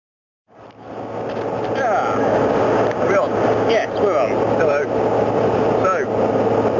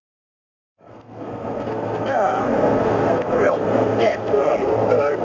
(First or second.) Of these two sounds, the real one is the first